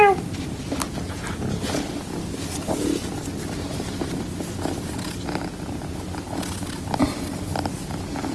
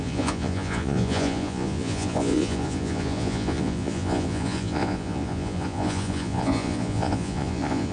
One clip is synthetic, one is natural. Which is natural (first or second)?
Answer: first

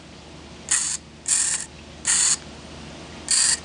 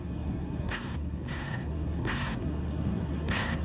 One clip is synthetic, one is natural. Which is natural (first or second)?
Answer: first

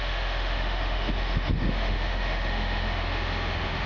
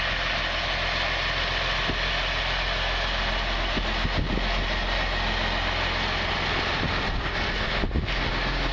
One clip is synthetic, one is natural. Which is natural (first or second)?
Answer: second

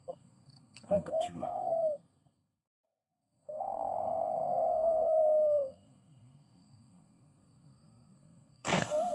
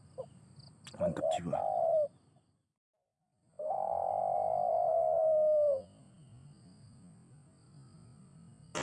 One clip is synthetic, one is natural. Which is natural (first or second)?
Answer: second